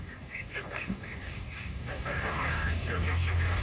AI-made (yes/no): yes